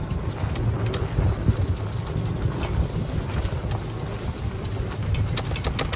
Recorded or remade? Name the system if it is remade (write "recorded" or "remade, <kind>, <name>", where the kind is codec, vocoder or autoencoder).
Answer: recorded